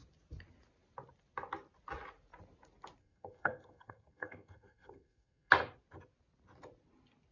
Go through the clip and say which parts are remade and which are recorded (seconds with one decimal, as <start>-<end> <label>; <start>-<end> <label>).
0.0-3.0 recorded; 3.0-5.5 remade; 5.5-7.3 recorded